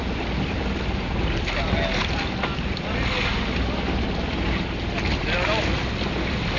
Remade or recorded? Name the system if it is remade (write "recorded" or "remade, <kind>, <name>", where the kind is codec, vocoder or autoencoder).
recorded